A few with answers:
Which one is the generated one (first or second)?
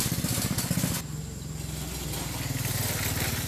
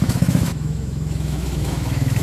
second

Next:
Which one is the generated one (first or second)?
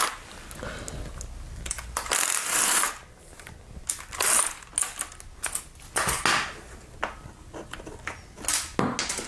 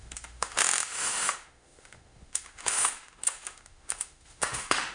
second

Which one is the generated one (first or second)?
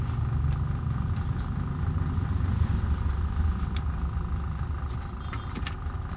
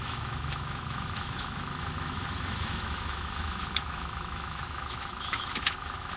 second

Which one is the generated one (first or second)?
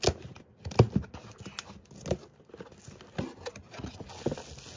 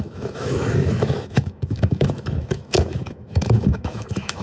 second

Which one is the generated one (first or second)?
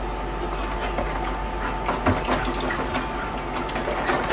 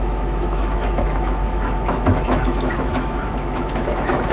second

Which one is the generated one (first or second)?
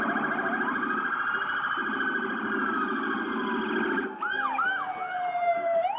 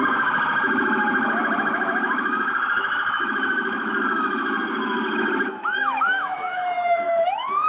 second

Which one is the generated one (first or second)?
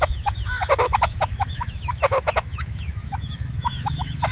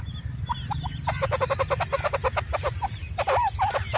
first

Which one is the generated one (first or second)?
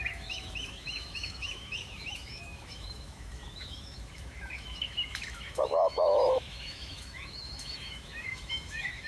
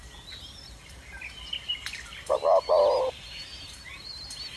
first